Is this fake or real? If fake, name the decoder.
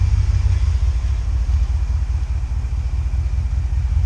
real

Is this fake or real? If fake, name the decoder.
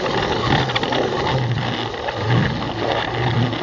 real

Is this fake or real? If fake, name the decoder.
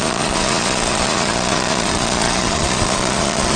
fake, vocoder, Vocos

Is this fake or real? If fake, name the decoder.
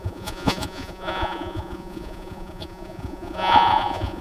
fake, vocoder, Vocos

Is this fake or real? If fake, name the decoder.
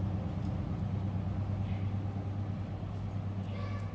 real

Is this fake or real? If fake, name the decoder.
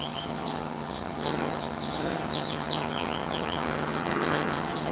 fake, vocoder, HiFi-GAN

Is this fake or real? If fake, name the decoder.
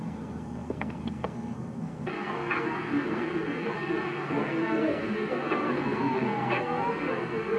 fake, codec, SNAC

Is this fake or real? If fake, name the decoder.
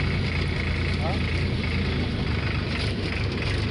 real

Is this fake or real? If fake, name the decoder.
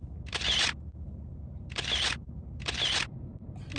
real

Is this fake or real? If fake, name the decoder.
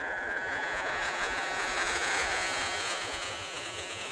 fake, vocoder, Vocos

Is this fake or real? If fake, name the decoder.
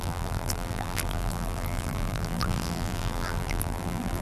fake, vocoder, BigVGAN v2